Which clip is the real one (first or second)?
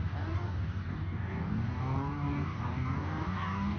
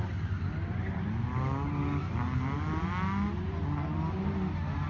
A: second